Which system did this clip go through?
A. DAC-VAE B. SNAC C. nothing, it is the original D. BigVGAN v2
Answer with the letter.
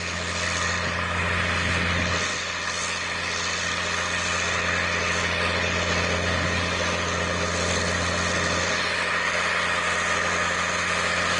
C